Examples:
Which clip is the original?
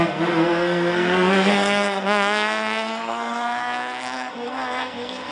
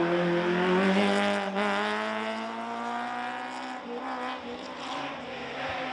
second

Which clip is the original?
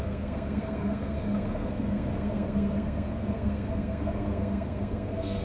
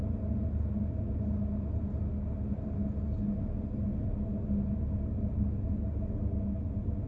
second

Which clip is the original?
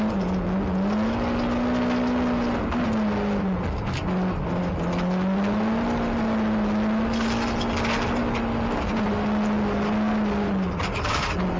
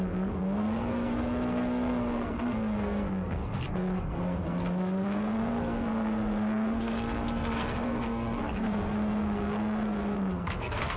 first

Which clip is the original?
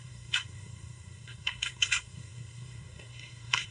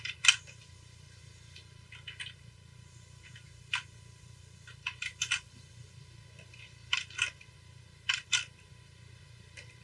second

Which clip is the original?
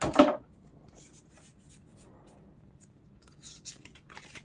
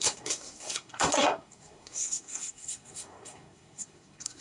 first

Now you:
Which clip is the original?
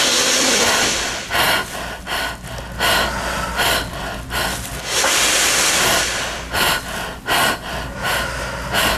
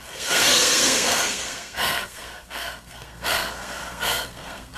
first